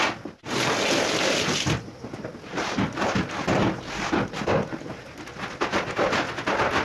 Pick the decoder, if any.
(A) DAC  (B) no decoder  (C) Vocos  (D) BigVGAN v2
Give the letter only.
B